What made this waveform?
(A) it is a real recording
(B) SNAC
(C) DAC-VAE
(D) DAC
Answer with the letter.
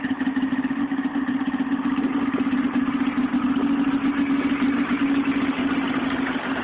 A